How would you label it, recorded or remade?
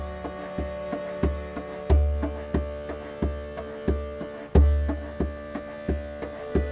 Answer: recorded